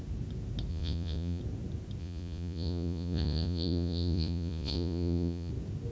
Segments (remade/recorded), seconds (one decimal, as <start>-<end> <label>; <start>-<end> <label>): 0.0-0.7 recorded; 0.7-1.4 remade; 1.4-2.0 recorded; 2.0-5.5 remade; 5.5-5.9 recorded

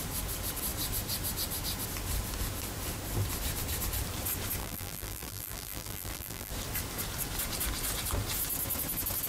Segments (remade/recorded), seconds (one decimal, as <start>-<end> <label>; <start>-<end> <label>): 0.0-4.6 recorded; 4.6-6.5 remade; 6.5-9.3 recorded

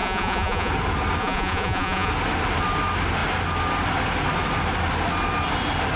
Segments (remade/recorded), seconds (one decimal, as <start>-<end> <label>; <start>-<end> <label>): 0.0-0.7 remade; 0.7-1.2 recorded; 1.2-2.1 remade; 2.1-6.0 recorded

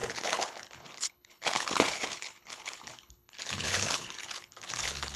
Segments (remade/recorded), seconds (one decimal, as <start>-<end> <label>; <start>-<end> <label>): 0.0-5.2 remade

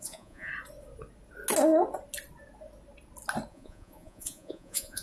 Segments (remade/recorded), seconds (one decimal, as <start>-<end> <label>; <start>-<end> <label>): 0.0-0.5 remade; 0.5-3.5 recorded; 3.5-5.0 remade

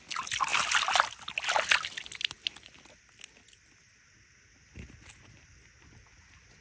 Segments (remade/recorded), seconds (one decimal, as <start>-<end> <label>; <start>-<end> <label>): 0.0-6.6 recorded